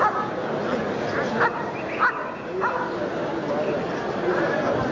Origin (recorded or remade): recorded